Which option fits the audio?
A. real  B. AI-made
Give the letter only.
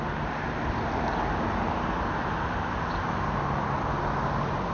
A